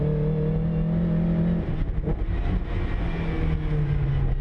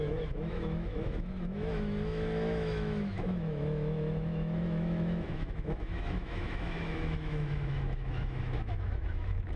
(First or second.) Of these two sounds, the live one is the first